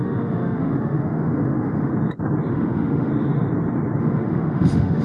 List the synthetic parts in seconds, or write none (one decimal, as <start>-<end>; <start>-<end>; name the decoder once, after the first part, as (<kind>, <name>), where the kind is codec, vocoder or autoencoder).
0.0-1.9 (autoencoder, DAC-VAE); 2.5-3.1; 4.0-5.0